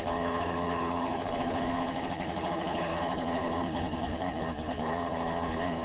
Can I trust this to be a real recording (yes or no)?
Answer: no